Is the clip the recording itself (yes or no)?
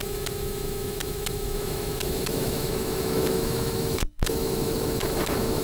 no